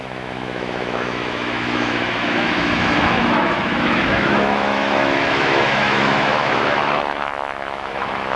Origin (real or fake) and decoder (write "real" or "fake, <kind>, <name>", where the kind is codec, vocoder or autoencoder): fake, autoencoder, DAC-VAE